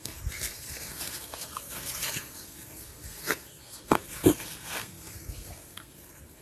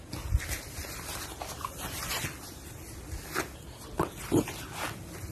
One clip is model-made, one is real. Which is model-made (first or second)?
first